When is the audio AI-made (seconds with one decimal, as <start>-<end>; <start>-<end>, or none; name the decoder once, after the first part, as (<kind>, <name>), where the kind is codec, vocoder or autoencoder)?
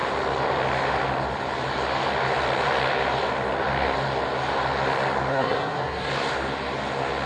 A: 5.3-6.1 (codec, SNAC)